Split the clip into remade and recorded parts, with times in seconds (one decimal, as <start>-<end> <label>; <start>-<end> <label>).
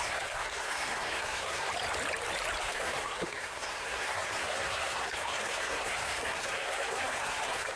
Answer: 0.0-1.7 remade; 1.7-2.6 recorded; 2.6-7.8 remade